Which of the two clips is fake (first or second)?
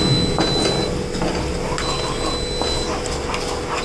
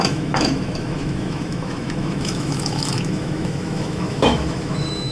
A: second